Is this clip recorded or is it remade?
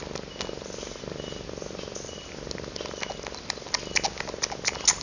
recorded